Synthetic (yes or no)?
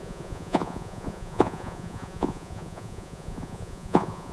yes